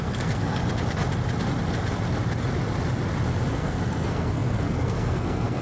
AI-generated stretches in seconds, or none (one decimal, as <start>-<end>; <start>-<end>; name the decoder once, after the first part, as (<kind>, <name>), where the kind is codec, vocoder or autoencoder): 0.0-0.6 (codec, SNAC); 3.5-5.6